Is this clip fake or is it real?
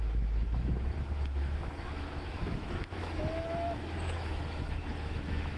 fake